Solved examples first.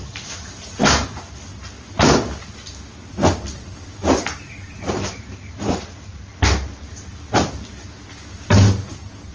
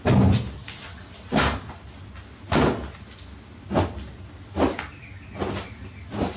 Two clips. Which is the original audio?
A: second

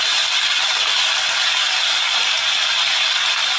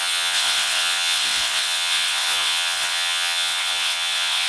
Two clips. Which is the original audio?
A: first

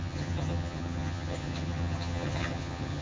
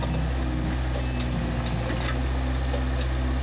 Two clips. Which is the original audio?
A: second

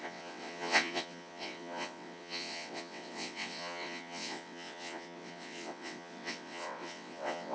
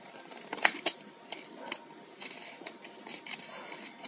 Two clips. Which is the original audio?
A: second